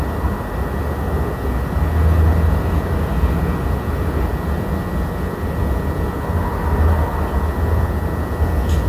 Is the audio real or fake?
real